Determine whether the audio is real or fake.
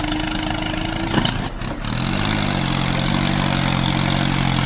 real